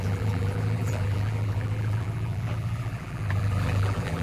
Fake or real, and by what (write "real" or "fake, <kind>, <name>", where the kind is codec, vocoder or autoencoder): fake, vocoder, BigVGAN v2